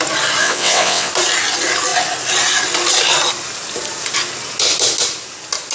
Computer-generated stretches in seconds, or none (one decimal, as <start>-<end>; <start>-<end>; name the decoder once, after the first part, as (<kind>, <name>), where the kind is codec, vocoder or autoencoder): 0.4-1.1 (vocoder, WaveNeXt)